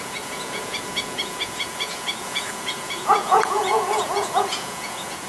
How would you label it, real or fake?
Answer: fake